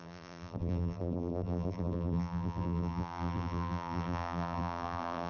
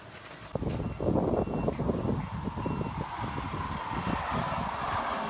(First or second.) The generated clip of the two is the first